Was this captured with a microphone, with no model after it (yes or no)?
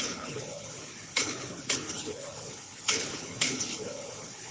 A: no